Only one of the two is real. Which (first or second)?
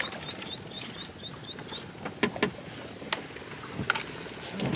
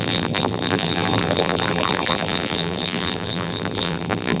first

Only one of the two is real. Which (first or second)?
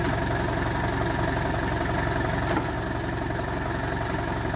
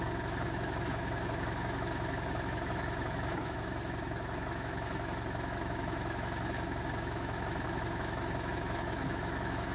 first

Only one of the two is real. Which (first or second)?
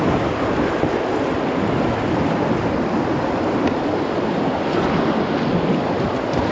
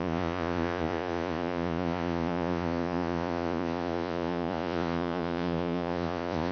first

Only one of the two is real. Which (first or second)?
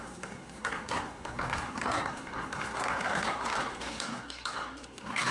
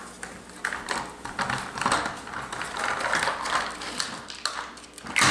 second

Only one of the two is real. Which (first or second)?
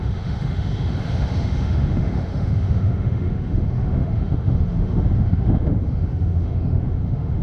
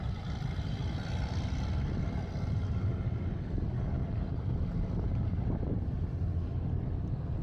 second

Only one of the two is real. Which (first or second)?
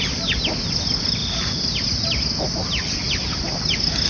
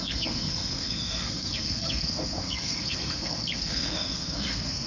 first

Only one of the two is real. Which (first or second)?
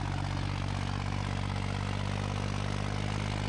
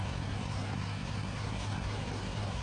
first